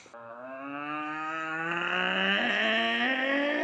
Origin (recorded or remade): remade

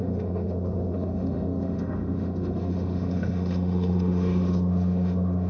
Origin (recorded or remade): remade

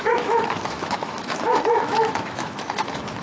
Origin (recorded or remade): remade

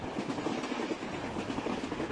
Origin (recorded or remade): recorded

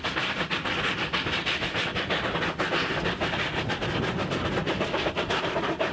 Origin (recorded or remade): recorded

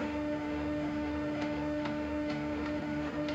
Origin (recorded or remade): remade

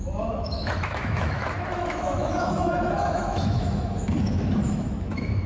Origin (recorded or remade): remade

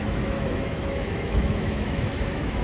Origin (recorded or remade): remade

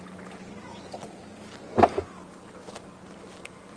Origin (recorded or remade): recorded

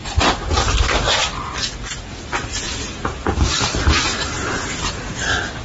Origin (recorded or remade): recorded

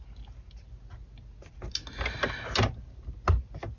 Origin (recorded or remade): recorded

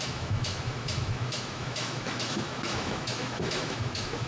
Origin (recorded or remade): remade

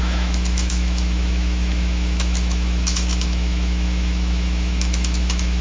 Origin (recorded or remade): remade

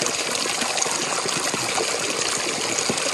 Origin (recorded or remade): recorded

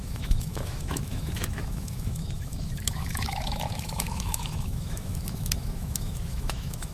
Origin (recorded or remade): remade